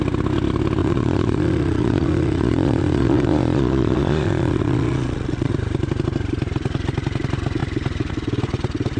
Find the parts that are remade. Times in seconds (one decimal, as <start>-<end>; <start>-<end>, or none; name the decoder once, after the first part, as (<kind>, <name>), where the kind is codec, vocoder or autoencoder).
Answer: 0.8-5.5 (vocoder, Vocos)